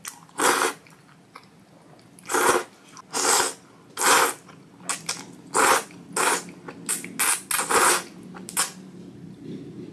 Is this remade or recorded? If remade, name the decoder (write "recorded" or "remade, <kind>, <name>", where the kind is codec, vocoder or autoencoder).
recorded